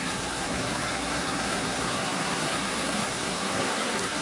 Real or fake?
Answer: fake